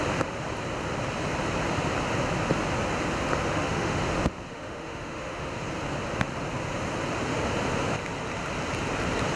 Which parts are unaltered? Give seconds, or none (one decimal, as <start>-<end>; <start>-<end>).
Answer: 0.0-3.5; 4.0-4.5; 5.6-9.4